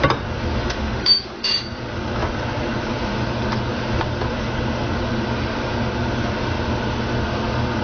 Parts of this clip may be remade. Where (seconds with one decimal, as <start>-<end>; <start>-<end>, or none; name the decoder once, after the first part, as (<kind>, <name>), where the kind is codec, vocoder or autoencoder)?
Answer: 0.6-1.5 (autoencoder, DAC-VAE)